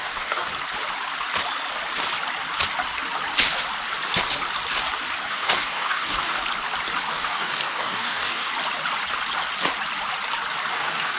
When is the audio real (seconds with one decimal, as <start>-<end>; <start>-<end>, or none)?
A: 0.5-5.3; 6.4-7.1; 8.5-10.7